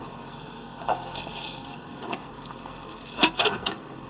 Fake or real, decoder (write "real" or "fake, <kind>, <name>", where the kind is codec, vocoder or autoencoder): fake, codec, SNAC